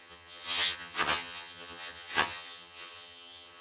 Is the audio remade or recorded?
remade